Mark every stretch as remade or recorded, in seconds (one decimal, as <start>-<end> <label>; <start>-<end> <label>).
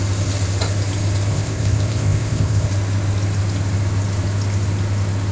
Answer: 0.0-1.3 recorded; 1.3-2.7 remade; 2.7-5.3 recorded